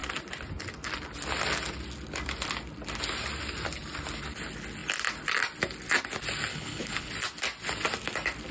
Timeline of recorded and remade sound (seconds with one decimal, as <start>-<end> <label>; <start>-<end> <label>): 0.0-6.5 recorded; 6.5-7.1 remade; 7.1-8.5 recorded